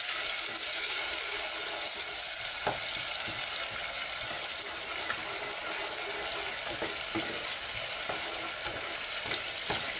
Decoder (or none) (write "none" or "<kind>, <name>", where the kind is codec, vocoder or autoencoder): none